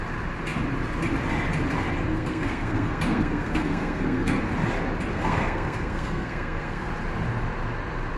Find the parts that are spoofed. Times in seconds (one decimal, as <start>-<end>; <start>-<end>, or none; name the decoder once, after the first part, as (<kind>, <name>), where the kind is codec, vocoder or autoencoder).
2.1-4.4 (codec, SNAC); 5.1-6.9